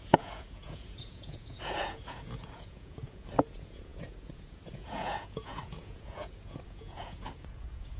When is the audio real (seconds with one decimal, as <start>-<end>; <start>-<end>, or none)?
none